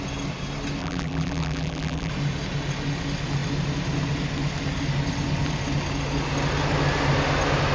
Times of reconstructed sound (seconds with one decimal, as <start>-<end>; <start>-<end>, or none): 0.8-2.1